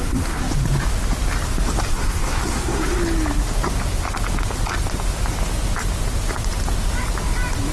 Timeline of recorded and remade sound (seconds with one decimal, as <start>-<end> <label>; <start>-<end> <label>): 0.0-0.5 remade; 0.5-1.9 recorded; 1.9-3.0 remade; 3.0-7.7 recorded